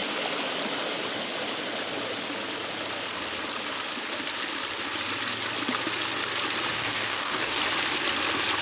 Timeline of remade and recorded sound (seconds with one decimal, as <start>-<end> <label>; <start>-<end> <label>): 0.0-6.7 recorded; 6.7-7.6 remade; 7.6-8.6 recorded